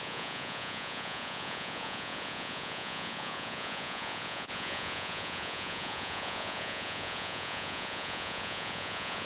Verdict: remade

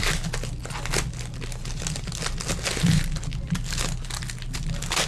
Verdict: recorded